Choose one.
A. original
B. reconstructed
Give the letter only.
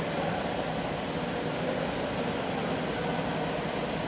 A